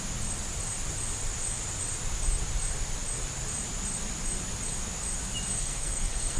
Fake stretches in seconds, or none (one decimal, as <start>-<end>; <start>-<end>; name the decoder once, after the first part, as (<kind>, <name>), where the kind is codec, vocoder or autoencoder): 5.5-6.4 (codec, SNAC)